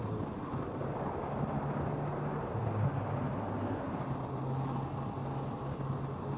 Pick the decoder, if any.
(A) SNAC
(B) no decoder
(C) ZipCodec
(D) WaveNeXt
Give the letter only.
B